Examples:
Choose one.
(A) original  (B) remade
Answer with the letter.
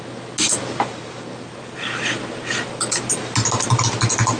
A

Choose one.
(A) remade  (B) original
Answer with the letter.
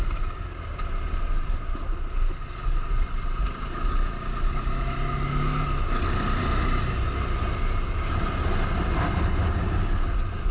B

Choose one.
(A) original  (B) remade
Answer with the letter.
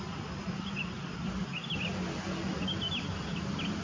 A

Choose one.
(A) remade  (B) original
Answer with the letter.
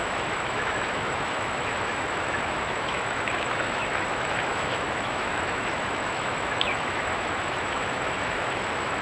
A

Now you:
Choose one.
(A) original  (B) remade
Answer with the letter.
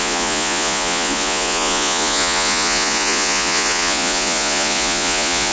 B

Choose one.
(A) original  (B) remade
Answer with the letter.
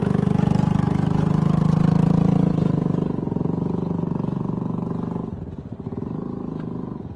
A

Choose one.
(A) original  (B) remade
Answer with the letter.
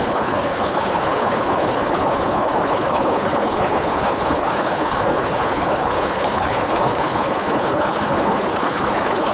B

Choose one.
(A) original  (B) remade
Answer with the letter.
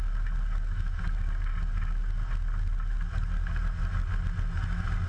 A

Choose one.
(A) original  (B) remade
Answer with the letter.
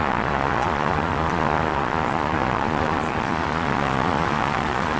B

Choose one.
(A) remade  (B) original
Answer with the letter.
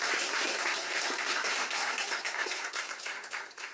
A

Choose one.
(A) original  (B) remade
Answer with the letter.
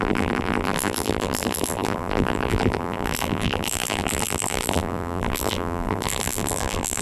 B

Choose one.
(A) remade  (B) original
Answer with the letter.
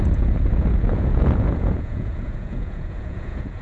A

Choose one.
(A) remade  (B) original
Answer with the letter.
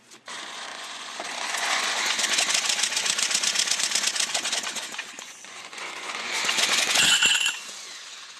A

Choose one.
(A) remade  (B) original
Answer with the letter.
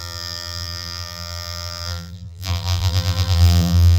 A